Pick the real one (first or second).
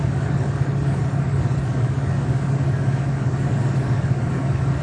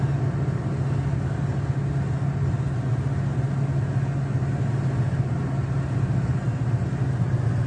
second